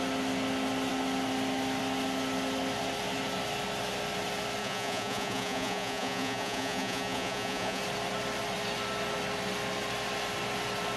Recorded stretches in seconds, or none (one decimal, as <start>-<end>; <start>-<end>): 0.0-4.6; 7.8-11.0